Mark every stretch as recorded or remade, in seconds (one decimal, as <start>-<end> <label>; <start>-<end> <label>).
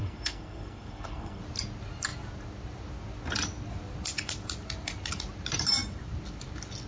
0.0-1.4 remade; 1.4-6.9 recorded